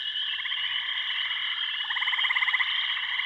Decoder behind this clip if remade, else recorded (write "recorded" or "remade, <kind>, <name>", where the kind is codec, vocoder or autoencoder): recorded